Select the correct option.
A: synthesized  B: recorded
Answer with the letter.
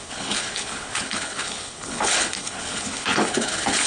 A